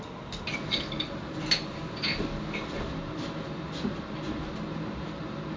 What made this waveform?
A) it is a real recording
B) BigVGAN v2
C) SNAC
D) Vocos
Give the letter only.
A